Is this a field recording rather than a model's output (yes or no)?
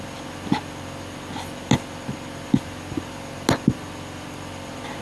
yes